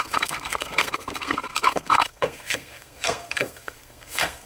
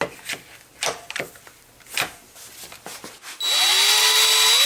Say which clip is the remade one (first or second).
first